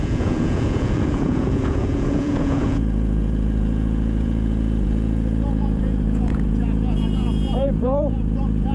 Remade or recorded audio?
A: remade